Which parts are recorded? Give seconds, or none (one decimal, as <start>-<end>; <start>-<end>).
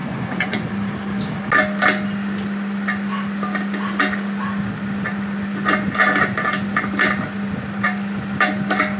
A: 0.7-9.0